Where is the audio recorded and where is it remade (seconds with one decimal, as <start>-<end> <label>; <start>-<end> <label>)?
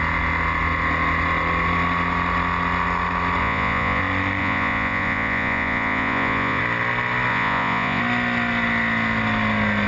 0.0-3.4 recorded; 3.4-4.0 remade; 4.0-4.4 recorded; 4.4-6.6 remade; 6.6-7.3 recorded; 7.3-8.0 remade; 8.0-9.9 recorded